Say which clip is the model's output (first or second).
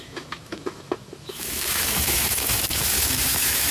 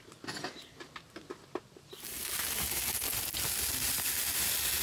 first